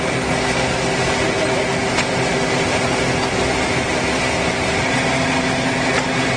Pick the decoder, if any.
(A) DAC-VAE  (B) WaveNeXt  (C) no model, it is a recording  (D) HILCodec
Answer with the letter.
C